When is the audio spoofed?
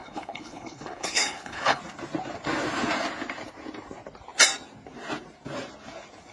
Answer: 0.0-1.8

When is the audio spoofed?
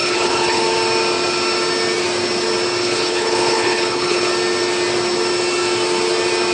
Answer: 0.0-0.6; 2.8-4.3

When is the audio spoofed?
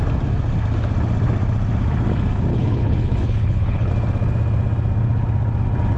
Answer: 2.5-3.9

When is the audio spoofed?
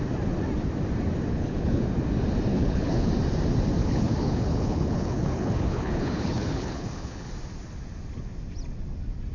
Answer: 1.3-1.8; 2.5-3.1; 3.8-7.3